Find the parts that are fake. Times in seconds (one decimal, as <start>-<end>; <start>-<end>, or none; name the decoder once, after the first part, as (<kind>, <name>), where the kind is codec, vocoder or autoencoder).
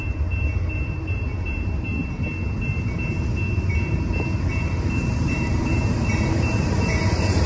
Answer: 0.0-2.0 (vocoder, BigVGAN v2); 2.8-7.5